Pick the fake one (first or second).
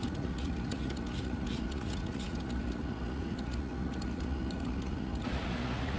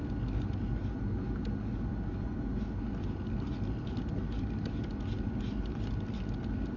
first